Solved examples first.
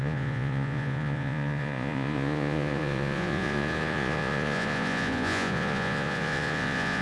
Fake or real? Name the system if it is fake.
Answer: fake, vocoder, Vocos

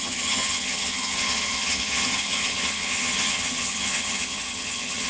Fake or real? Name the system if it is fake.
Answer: fake, vocoder, HiFi-GAN